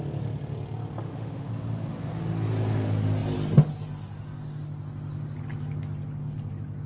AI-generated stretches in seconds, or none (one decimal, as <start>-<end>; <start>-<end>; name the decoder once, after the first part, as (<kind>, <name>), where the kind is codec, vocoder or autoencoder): 1.0-1.5 (autoencoder, DAC-VAE)